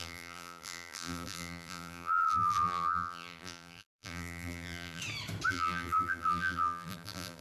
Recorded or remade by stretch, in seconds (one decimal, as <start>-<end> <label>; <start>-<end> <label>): 0.0-5.0 remade; 5.0-5.5 recorded; 5.5-7.4 remade